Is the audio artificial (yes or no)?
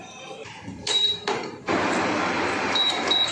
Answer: yes